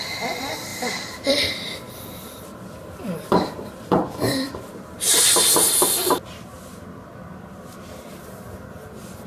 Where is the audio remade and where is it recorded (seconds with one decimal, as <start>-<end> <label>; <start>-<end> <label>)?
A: 0.0-0.7 recorded; 0.7-5.2 remade; 5.2-9.3 recorded